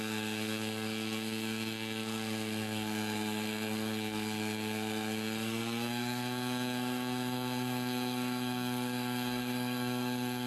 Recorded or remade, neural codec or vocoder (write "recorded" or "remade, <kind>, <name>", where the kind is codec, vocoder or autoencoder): remade, codec, SNAC